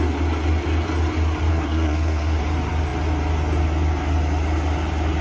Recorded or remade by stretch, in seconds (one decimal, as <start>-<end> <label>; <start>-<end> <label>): 0.0-1.5 recorded; 1.5-2.4 remade; 2.4-5.2 recorded